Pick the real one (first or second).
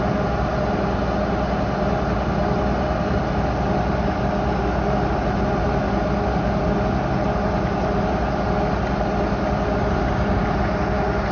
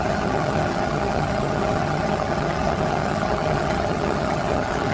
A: first